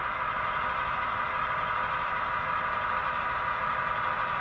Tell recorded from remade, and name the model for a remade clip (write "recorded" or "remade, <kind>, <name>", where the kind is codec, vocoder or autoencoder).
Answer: recorded